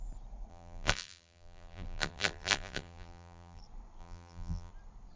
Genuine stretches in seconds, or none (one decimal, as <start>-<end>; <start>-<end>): 0.0-0.5; 3.6-4.0; 4.7-5.2